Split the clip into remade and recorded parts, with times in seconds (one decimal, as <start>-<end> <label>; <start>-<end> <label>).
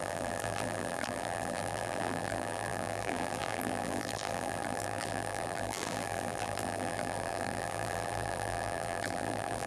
0.0-9.7 remade